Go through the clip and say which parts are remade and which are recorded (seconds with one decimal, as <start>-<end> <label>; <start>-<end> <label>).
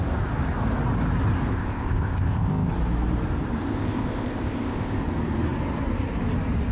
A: 0.0-1.5 recorded; 1.5-2.7 remade; 2.7-3.6 recorded; 3.6-5.0 remade; 5.0-6.7 recorded